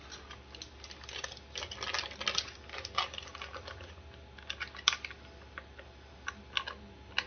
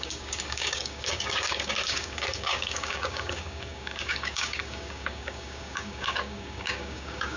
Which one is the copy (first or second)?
second